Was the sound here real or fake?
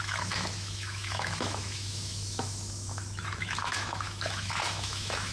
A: fake